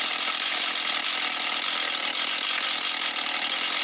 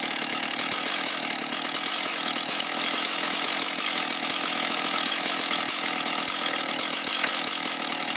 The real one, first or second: first